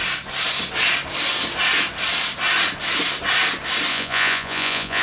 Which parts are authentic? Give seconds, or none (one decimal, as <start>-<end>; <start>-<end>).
0.0-3.9